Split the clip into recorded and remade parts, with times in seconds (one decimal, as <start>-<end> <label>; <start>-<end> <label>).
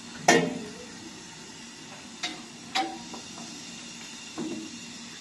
0.0-5.2 recorded